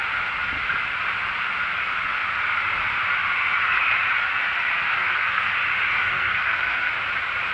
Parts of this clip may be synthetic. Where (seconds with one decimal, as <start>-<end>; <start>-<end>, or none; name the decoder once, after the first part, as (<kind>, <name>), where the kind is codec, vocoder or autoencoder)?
4.9-5.5 (codec, SNAC); 6.0-6.9